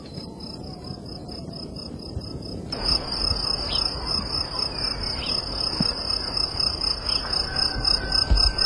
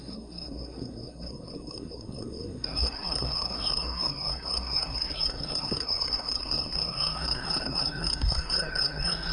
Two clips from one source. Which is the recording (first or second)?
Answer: first